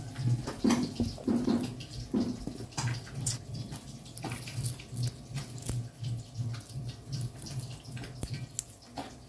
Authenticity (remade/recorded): recorded